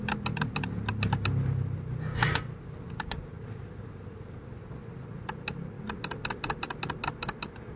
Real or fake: real